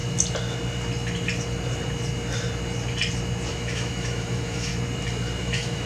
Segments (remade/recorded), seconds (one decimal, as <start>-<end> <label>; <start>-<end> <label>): 0.0-3.5 recorded; 3.5-4.7 remade; 4.7-5.4 recorded; 5.4-5.9 remade